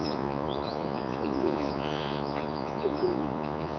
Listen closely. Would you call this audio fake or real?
fake